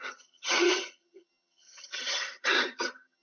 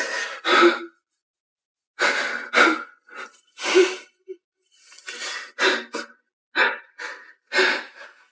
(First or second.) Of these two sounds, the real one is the second